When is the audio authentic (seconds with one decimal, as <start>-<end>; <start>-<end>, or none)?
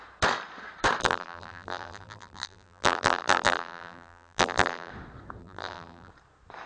0.0-1.0; 4.9-5.4; 6.1-6.7